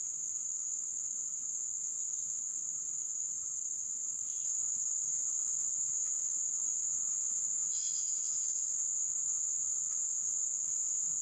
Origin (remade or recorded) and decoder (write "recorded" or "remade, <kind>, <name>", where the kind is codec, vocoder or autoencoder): remade, autoencoder, DAC-VAE